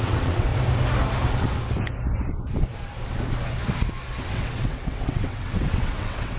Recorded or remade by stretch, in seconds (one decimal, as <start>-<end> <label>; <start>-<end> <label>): 0.0-0.5 remade; 0.5-4.3 recorded; 4.3-6.4 remade